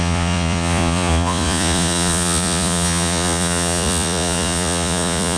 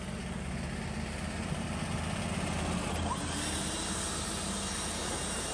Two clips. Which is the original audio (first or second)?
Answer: second